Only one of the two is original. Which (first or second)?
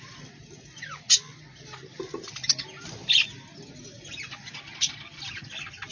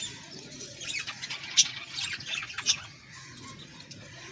first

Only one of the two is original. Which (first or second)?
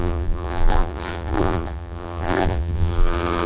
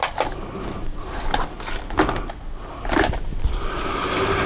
second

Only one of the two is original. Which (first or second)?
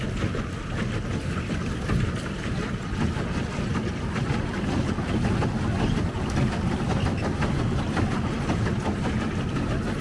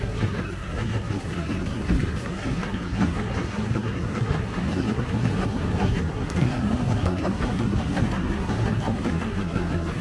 first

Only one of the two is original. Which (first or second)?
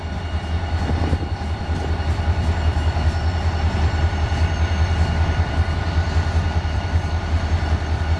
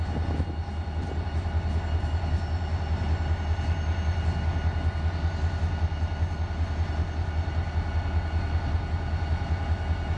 second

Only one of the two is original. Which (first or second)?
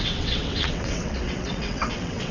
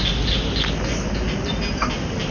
second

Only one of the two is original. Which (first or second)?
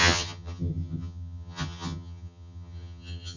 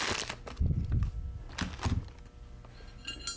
second